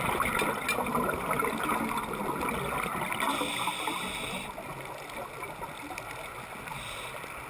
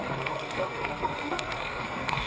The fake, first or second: second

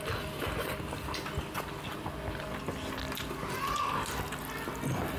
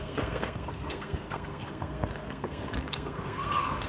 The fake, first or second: second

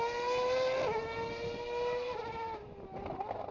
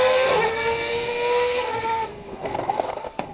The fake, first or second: second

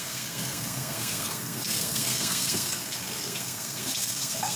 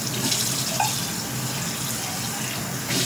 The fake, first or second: first